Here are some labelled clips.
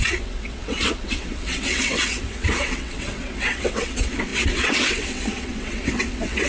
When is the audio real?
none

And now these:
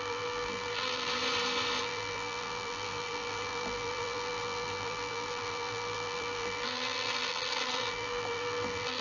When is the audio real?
1.2-1.8

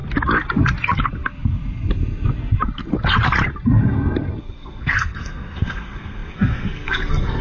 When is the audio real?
0.0-4.4

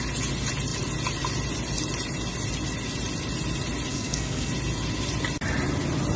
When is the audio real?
0.0-3.9; 4.5-6.2

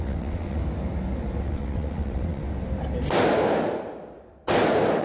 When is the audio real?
0.6-1.4; 2.4-5.0